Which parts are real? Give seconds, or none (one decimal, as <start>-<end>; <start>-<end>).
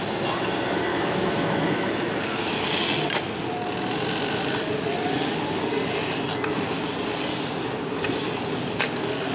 0.0-0.9; 2.2-9.3